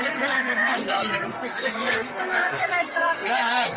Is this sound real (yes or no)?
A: no